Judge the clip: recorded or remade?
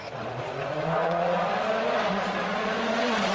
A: remade